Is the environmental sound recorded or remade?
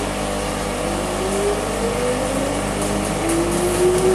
recorded